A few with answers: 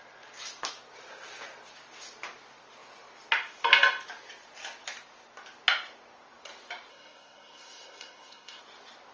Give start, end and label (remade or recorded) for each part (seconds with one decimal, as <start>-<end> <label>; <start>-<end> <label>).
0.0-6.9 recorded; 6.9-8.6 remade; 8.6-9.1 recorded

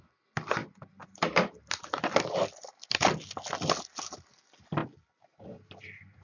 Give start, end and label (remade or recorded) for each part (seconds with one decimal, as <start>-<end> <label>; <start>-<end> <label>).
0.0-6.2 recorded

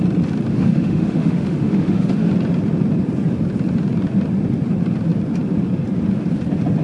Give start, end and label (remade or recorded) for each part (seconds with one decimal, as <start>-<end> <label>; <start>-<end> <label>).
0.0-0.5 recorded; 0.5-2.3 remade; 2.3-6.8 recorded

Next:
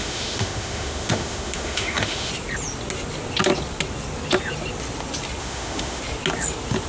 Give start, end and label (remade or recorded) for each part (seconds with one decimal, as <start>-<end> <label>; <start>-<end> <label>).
0.0-2.3 remade; 2.3-5.4 recorded; 5.4-6.0 remade; 6.0-6.9 recorded

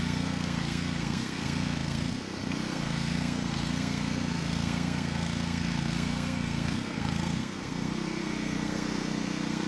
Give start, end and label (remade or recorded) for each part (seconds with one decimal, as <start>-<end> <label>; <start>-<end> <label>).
0.0-9.7 remade

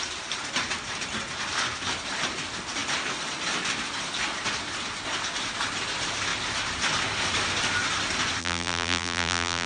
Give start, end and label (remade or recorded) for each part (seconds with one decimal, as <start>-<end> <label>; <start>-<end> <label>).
0.0-8.4 recorded; 8.4-9.7 remade

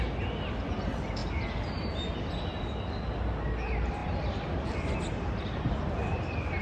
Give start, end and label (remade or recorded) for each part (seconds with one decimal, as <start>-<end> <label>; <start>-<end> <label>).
0.0-6.6 recorded